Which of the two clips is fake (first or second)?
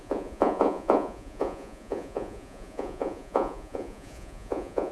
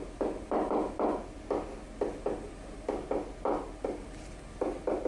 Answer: first